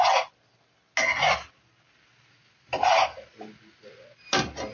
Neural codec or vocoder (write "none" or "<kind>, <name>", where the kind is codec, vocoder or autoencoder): none